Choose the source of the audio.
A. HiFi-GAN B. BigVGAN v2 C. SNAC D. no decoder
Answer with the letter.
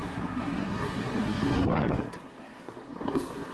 C